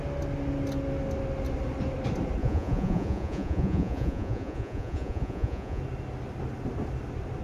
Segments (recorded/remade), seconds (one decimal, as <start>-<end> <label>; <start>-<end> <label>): 0.0-2.4 recorded; 2.4-5.8 remade; 5.8-7.4 recorded